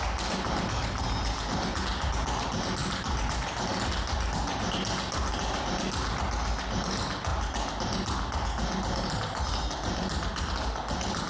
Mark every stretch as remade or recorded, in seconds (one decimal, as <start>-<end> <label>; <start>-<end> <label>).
0.0-11.3 recorded

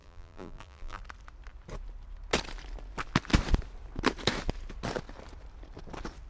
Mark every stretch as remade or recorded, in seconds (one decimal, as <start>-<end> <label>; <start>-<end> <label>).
0.0-1.0 remade; 1.0-6.3 recorded

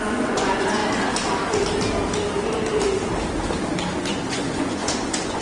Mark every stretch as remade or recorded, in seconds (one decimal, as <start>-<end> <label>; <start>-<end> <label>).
0.0-0.8 remade; 0.8-4.0 recorded; 4.0-5.4 remade

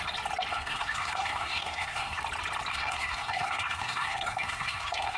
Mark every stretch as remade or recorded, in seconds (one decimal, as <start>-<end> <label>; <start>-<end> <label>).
0.0-0.5 recorded; 0.5-2.2 remade; 2.2-2.7 recorded; 2.7-5.2 remade